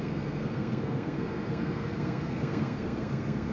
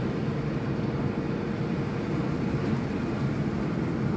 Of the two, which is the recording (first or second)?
second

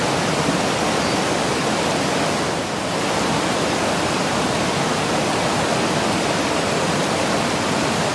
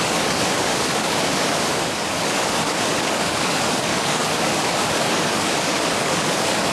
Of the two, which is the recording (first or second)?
first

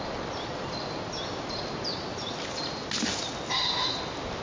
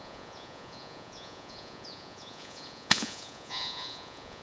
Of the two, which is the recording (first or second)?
first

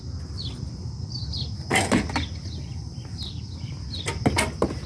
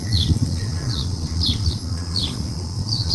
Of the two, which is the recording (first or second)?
first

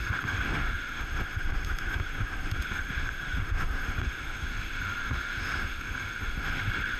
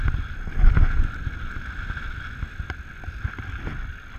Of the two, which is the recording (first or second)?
second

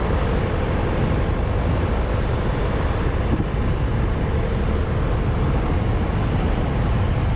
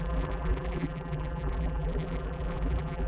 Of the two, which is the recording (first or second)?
first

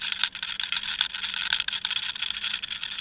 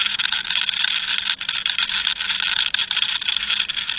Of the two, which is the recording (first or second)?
second